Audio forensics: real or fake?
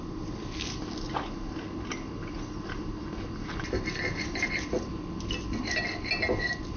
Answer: real